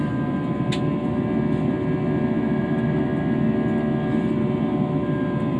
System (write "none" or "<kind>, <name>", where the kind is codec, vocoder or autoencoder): none